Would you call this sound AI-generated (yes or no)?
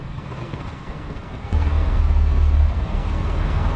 yes